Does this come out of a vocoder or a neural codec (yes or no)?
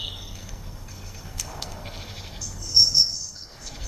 yes